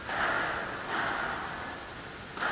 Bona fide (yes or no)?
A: yes